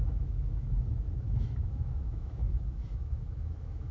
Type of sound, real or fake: fake